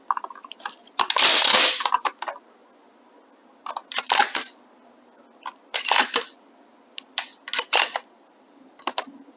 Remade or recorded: recorded